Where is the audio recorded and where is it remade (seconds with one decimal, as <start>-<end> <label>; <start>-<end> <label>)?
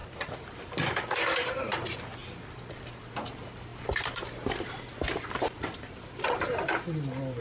0.0-0.6 recorded; 0.6-2.2 remade; 2.2-3.1 recorded; 3.1-7.4 remade